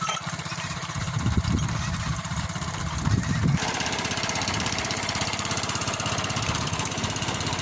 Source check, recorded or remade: remade